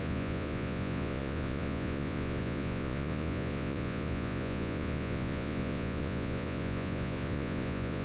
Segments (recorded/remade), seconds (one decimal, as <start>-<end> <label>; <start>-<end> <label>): 0.0-8.0 remade